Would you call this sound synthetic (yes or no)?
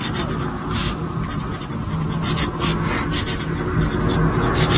no